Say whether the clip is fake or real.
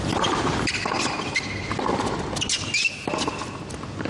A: real